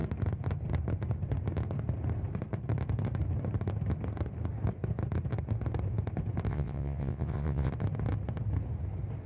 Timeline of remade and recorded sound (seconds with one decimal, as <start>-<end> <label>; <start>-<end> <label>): 0.0-6.5 recorded; 6.5-7.7 remade; 7.7-9.3 recorded